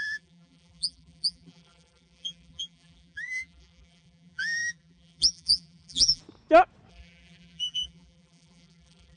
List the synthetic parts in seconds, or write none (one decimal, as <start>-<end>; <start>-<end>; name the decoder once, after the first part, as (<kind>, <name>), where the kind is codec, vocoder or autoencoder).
0.0-6.2 (vocoder, BigVGAN v2); 6.9-9.2